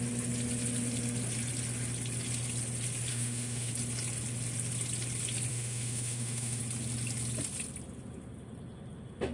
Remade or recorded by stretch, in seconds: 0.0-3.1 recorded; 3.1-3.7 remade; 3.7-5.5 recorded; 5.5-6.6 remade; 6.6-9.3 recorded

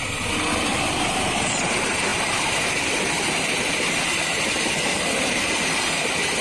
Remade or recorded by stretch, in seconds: 0.0-6.4 recorded

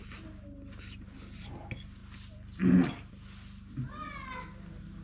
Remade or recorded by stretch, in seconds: 0.0-5.0 recorded

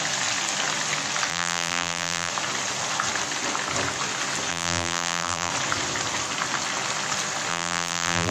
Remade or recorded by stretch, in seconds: 0.0-1.3 recorded; 1.3-2.3 remade; 2.3-4.5 recorded; 4.5-5.5 remade; 5.5-7.5 recorded; 7.5-8.3 remade

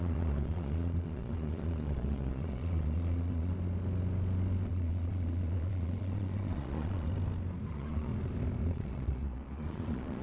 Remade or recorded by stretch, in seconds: 0.0-3.5 remade; 3.5-4.7 recorded; 4.7-7.1 remade; 7.1-7.7 recorded; 7.7-8.1 remade; 8.1-8.6 recorded; 8.6-10.2 remade

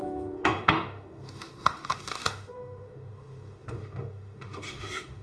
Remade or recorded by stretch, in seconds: 0.0-5.2 remade

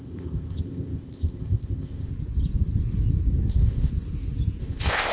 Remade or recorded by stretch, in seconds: 0.0-2.1 remade; 2.1-3.5 recorded; 3.5-3.9 remade; 3.9-4.6 recorded; 4.6-5.1 remade

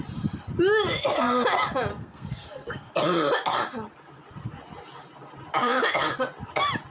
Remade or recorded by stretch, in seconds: 0.0-1.9 recorded; 1.9-2.9 remade; 2.9-6.9 recorded